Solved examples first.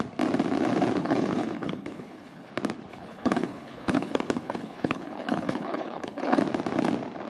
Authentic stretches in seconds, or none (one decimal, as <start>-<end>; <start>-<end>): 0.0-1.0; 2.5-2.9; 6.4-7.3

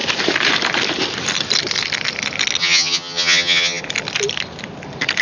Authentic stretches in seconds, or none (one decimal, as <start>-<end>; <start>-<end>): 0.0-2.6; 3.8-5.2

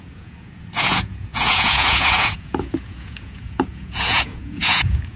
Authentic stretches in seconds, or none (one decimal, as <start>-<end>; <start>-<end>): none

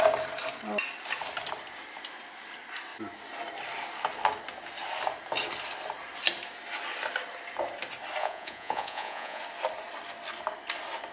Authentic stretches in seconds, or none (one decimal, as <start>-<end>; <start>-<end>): 0.0-8.2; 9.4-11.1